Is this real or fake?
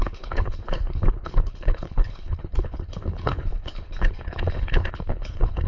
fake